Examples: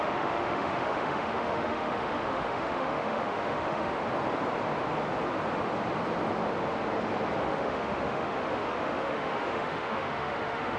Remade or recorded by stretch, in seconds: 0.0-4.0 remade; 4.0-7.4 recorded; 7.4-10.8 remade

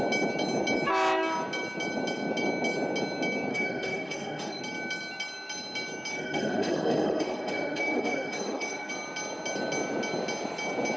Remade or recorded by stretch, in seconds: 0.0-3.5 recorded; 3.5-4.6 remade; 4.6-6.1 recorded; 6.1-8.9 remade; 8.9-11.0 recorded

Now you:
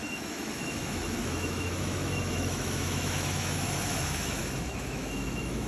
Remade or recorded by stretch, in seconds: 0.0-5.7 remade